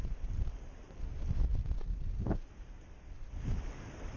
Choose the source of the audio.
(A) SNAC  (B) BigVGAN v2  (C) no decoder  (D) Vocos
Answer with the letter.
C